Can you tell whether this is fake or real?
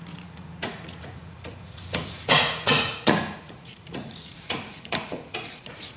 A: fake